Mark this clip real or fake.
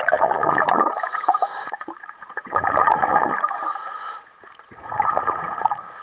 fake